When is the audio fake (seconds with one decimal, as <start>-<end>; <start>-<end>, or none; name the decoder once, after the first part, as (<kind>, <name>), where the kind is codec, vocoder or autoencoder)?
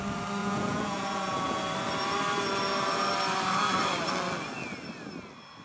0.4-1.6 (vocoder, Vocos)